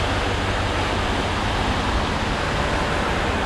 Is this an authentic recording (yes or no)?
yes